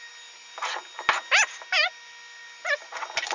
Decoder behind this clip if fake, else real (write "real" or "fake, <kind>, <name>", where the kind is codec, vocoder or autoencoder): real